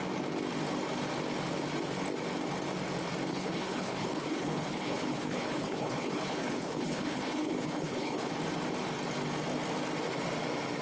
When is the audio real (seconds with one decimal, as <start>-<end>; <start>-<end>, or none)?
0.0-3.3; 8.3-10.8